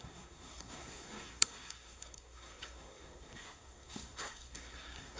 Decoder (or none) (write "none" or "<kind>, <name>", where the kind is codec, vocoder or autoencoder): codec, SNAC